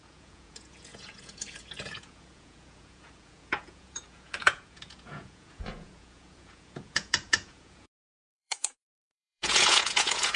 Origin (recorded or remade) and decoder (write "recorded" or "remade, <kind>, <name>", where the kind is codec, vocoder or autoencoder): remade, vocoder, Vocos